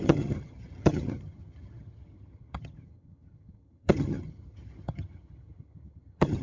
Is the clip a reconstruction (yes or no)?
yes